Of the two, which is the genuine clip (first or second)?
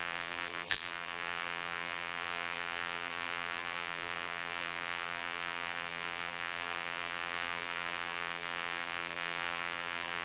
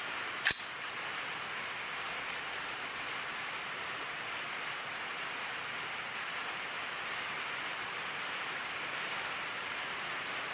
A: second